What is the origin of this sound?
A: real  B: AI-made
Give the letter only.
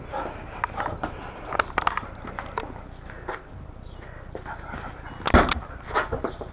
A